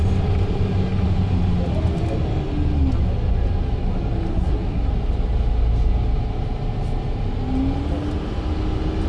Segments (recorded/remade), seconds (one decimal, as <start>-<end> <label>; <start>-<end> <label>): 0.0-4.3 recorded; 4.3-4.9 remade; 4.9-9.1 recorded